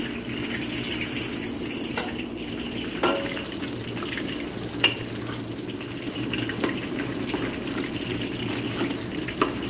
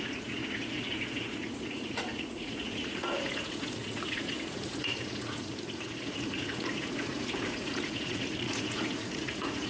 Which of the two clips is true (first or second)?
first